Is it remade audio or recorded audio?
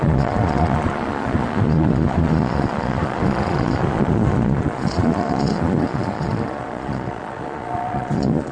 remade